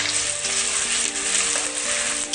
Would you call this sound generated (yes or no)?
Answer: no